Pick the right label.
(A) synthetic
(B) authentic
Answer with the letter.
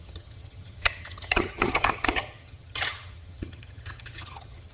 A